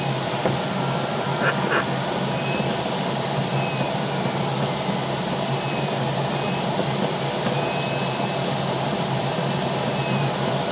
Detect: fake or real real